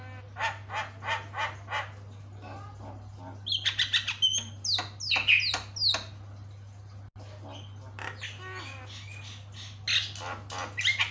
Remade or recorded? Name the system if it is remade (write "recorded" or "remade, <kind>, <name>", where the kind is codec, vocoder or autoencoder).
recorded